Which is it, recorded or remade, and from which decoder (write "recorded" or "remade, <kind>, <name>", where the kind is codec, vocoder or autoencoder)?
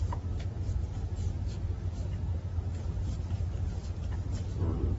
recorded